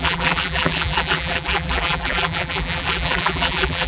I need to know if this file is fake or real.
fake